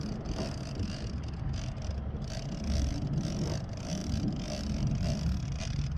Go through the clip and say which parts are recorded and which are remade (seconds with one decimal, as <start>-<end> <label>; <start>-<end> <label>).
0.0-6.0 recorded